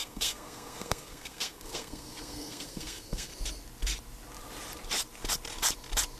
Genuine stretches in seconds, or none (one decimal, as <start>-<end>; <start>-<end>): 3.3-6.2